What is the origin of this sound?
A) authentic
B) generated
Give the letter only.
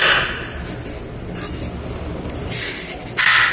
A